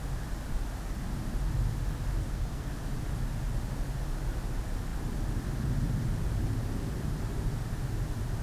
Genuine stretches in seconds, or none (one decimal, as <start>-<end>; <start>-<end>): 0.0-2.2; 2.7-8.4